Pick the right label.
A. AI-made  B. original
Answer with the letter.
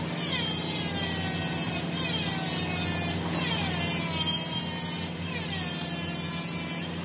B